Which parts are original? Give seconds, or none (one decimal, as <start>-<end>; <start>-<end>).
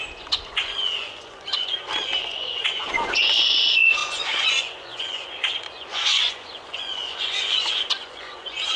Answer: none